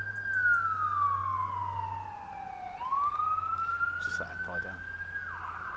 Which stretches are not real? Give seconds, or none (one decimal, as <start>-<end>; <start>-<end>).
none